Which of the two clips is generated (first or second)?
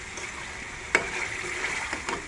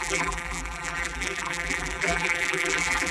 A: second